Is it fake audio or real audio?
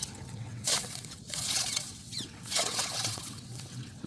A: fake